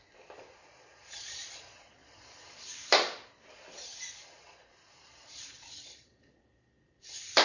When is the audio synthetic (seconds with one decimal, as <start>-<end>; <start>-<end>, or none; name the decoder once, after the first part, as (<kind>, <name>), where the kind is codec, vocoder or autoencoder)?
0.6-2.5 (vocoder, Vocos); 3.8-7.0